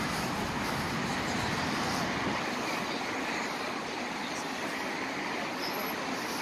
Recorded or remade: recorded